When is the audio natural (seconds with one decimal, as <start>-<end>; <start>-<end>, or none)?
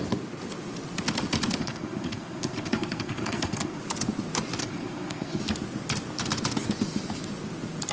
0.0-1.6; 3.8-4.6; 5.4-7.9